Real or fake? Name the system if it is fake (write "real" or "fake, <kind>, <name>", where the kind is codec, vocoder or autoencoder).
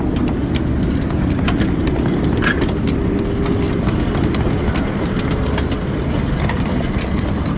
real